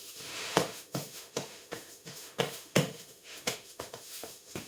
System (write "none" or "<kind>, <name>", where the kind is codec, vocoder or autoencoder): autoencoder, DAC-VAE